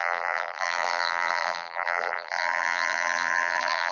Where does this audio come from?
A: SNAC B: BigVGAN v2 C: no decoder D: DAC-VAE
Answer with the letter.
B